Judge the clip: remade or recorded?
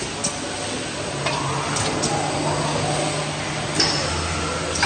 recorded